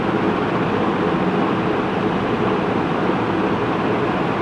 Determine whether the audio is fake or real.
real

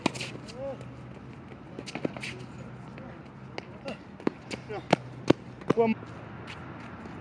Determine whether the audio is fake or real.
real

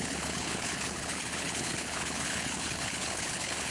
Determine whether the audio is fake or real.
fake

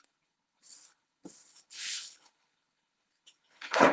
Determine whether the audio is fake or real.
fake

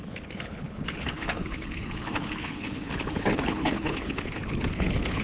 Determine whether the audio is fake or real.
fake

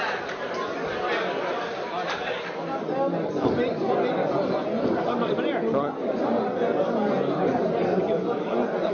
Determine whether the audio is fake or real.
real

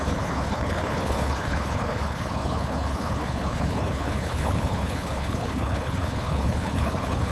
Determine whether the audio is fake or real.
fake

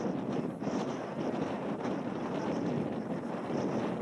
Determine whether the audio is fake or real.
real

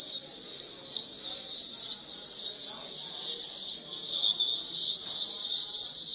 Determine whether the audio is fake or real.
real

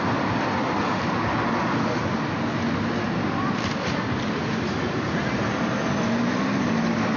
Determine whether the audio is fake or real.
real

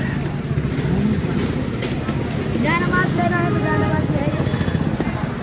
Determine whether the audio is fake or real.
real